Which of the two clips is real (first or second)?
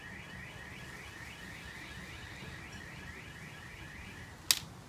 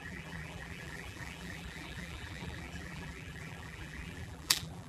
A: first